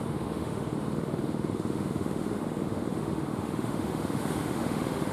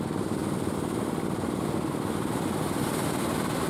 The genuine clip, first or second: second